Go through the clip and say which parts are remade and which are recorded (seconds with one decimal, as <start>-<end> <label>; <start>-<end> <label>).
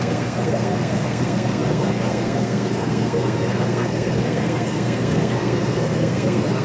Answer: 0.0-6.6 remade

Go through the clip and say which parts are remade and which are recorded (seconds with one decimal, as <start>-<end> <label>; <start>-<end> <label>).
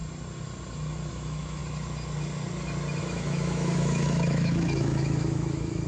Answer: 0.0-1.1 recorded; 1.1-1.6 remade; 1.6-3.0 recorded; 3.0-5.9 remade